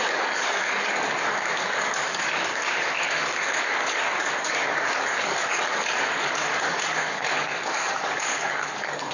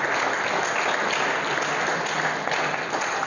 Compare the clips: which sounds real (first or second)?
second